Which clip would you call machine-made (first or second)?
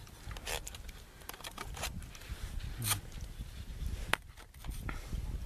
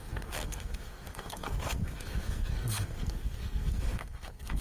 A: second